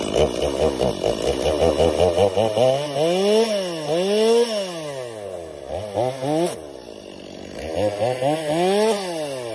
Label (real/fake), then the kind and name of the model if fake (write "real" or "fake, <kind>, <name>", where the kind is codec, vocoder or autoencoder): real